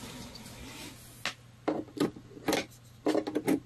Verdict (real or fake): real